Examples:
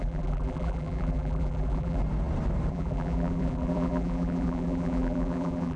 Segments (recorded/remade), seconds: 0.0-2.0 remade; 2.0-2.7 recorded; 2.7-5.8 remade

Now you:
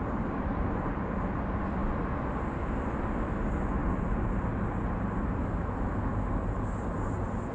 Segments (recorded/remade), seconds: 0.0-7.5 recorded

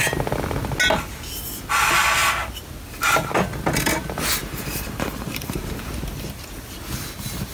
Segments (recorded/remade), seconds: 0.0-4.4 recorded; 4.4-5.6 remade; 5.6-7.5 recorded

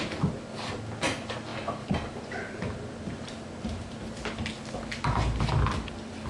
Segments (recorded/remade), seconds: 0.0-1.5 recorded; 1.5-4.5 remade; 4.5-6.3 recorded

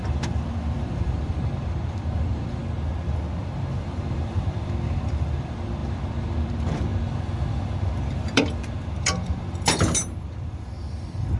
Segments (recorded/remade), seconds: 0.0-2.6 remade; 2.6-3.8 recorded; 3.8-11.4 remade

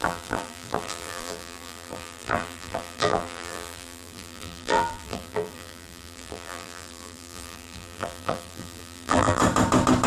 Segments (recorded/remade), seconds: 0.0-9.4 remade; 9.4-10.1 recorded

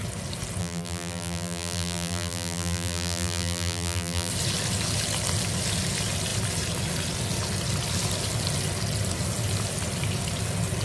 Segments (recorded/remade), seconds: 0.0-0.6 recorded; 0.6-4.3 remade; 4.3-10.8 recorded

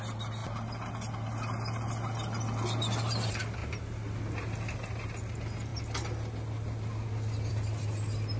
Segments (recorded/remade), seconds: 0.0-8.4 recorded